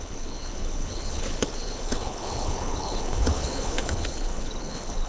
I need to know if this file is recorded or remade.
remade